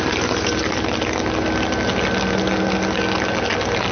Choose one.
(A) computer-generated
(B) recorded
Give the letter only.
B